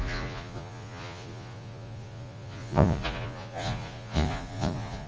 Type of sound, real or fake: fake